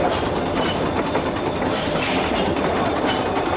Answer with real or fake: real